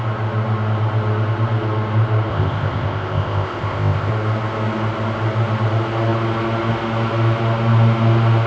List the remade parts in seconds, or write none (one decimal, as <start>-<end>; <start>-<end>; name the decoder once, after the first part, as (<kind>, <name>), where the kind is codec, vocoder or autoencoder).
2.3-4.1 (codec, ZipCodec)